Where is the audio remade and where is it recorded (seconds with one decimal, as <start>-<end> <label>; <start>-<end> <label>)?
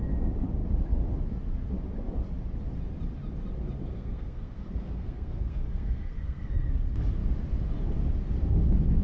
0.0-3.9 recorded; 3.9-6.7 remade; 6.7-9.0 recorded